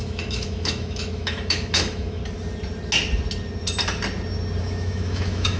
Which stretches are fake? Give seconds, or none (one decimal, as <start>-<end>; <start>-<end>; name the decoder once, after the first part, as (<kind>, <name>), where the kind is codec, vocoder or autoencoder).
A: 0.0-2.2 (autoencoder, DAC-VAE); 4.6-5.6